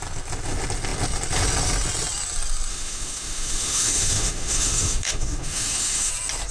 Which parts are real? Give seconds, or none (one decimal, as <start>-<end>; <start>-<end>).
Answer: 0.0-2.7; 6.1-6.5